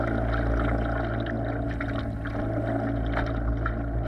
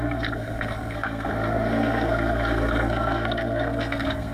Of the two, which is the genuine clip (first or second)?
first